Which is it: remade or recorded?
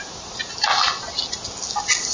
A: recorded